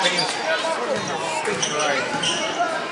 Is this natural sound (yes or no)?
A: yes